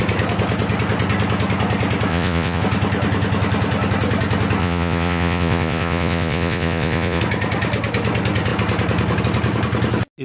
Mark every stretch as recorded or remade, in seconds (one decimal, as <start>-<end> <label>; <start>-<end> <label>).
0.0-2.1 recorded; 2.1-2.6 remade; 2.6-4.6 recorded; 4.6-7.2 remade; 7.2-10.2 recorded